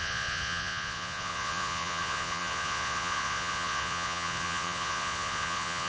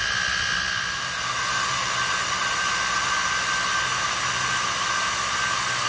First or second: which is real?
second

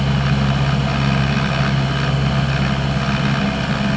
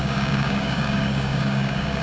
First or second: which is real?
first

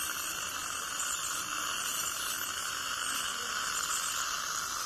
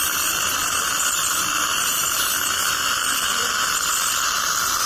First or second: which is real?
first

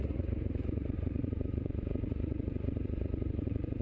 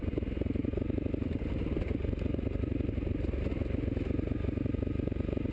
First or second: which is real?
second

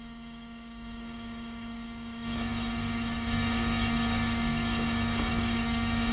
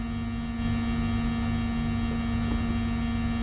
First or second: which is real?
second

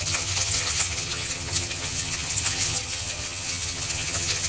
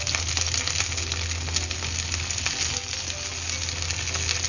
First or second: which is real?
second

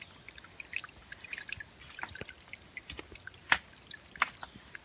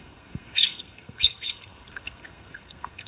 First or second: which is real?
first